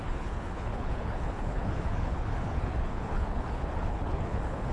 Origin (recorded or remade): remade